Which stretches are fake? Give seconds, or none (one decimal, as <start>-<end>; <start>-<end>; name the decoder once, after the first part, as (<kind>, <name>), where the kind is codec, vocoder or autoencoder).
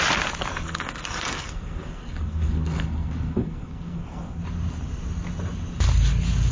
0.5-4.4 (codec, SNAC)